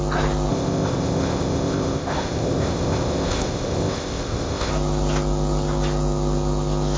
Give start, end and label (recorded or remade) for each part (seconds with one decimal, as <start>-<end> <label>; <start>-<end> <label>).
0.0-0.5 recorded; 0.5-4.7 remade; 4.7-7.0 recorded